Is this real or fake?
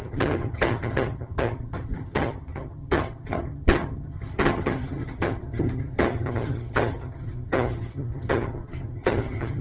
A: fake